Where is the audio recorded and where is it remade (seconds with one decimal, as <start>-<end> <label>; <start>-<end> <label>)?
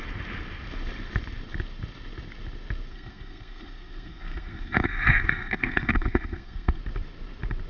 0.0-2.9 recorded; 2.9-6.8 remade; 6.8-7.7 recorded